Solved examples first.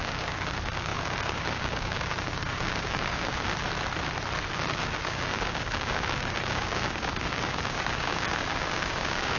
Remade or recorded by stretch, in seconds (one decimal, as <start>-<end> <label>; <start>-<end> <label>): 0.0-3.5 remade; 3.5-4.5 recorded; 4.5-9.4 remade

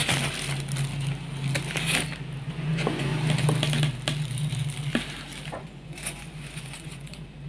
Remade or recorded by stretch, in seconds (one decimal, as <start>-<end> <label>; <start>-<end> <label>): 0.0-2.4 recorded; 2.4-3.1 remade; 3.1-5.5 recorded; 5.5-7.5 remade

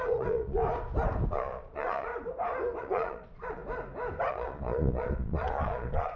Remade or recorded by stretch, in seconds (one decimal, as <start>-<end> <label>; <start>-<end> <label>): 0.0-0.6 remade; 0.6-1.3 recorded; 1.3-2.1 remade; 2.1-2.8 recorded; 2.8-3.6 remade; 3.6-4.3 recorded; 4.3-6.2 remade